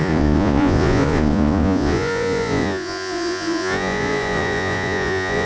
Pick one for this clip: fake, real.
fake